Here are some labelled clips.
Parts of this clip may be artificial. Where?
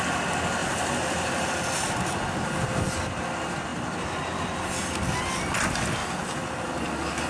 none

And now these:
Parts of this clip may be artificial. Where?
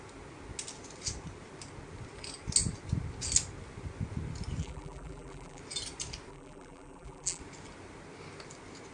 4.6-5.6 (vocoder, BigVGAN v2); 6.3-7.4